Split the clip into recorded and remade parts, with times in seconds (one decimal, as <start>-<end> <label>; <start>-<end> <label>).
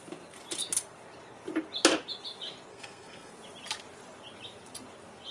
0.0-2.7 recorded; 2.7-3.3 remade; 3.3-5.3 recorded